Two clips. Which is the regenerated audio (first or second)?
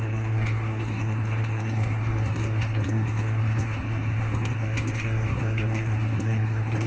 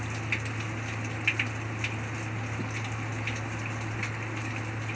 first